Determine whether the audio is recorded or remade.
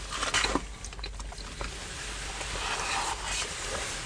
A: recorded